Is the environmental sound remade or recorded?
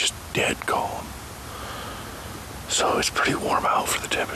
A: recorded